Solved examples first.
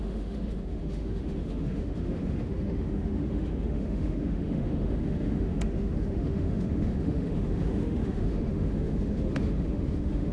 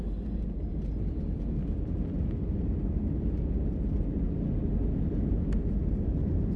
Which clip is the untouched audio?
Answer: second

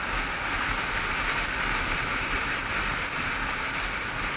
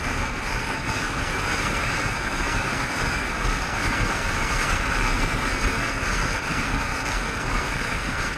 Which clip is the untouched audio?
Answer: first